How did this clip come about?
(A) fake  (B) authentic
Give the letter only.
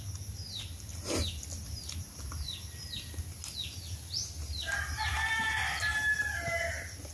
B